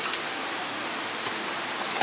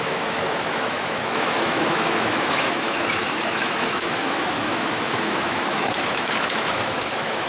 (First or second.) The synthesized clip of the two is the second